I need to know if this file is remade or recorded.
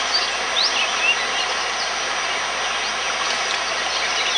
recorded